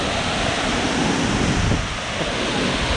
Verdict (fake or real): real